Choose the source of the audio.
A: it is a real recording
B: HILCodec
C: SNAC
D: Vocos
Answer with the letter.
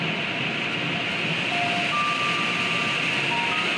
A